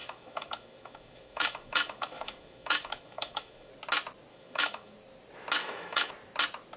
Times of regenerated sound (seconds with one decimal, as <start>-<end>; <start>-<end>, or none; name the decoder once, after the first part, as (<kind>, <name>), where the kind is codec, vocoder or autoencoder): 0.0-3.7 (autoencoder, DAC-VAE); 4.3-4.9; 5.6-6.1